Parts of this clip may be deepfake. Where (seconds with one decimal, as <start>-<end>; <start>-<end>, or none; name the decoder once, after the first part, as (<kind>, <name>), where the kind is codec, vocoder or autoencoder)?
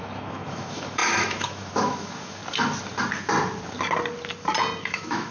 0.0-2.4 (autoencoder, DAC-VAE); 4.8-5.3